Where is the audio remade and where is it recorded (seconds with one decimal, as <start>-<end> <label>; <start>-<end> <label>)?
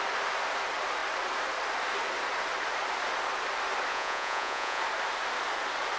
0.0-3.9 recorded; 3.9-4.8 remade; 4.8-6.0 recorded